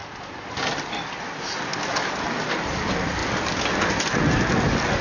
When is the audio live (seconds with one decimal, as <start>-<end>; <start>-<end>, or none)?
0.0-5.0